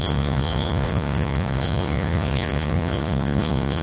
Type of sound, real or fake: fake